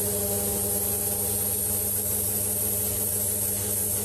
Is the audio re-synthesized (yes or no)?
no